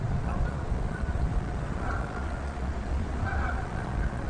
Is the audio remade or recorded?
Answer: remade